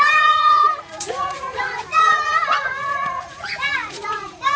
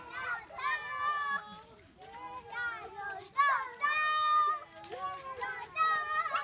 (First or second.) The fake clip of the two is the first